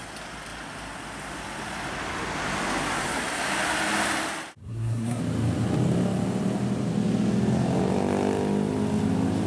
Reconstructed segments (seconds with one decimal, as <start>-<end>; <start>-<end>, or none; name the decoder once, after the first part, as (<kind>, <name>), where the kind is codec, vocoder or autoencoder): 4.6-5.2 (codec, SNAC)